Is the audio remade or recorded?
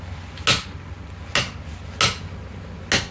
recorded